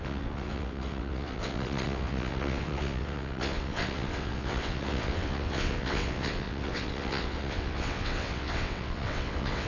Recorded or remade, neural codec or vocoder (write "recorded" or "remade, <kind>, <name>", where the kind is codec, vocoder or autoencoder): remade, vocoder, WaveNeXt